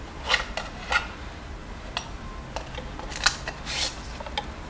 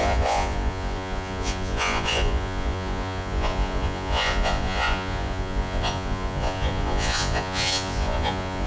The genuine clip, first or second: first